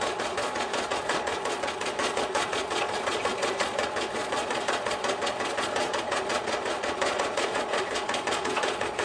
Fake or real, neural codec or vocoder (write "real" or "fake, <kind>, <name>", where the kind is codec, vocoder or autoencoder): fake, vocoder, Vocos